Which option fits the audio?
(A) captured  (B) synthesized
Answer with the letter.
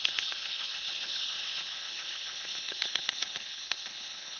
B